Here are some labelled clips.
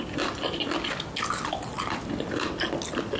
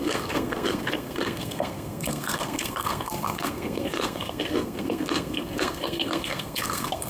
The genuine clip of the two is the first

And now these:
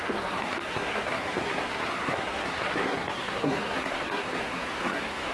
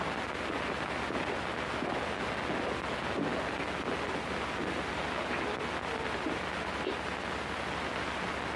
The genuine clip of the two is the second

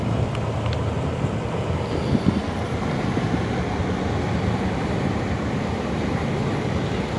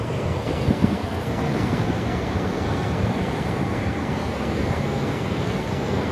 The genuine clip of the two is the first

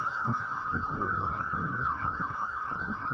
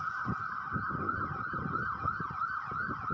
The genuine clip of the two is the second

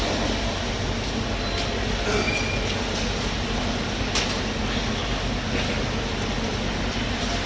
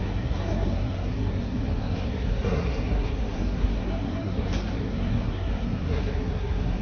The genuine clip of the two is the first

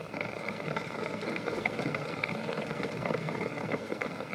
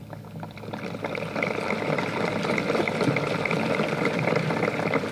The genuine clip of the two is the second